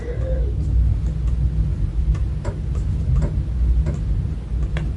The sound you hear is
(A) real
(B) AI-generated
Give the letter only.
A